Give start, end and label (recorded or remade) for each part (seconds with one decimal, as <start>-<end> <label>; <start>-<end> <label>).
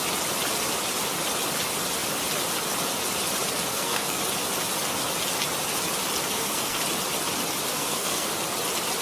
0.0-3.7 recorded; 3.7-4.2 remade; 4.2-6.2 recorded; 6.2-6.8 remade; 6.8-7.7 recorded; 7.7-8.3 remade; 8.3-9.0 recorded